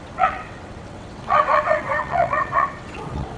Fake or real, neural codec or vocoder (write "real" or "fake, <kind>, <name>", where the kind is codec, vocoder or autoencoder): fake, vocoder, WaveNeXt